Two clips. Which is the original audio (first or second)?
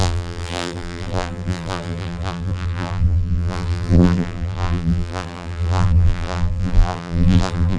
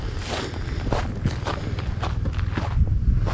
second